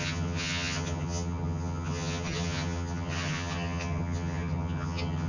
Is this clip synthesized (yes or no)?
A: yes